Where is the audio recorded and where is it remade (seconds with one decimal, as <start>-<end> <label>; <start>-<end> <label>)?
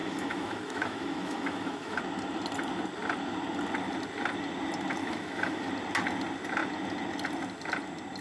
0.0-2.0 remade; 2.0-5.0 recorded; 5.0-5.7 remade; 5.7-8.2 recorded